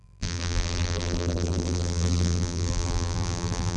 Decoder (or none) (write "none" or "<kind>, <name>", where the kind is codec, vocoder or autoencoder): vocoder, BigVGAN v2